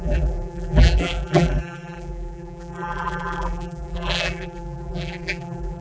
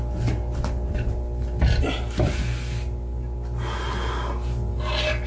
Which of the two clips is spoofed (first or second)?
first